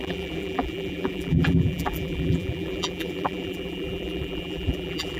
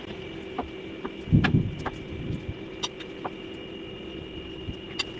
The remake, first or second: first